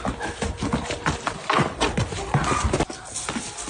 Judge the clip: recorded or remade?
recorded